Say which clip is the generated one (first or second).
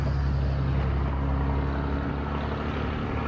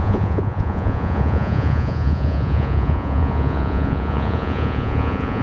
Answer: second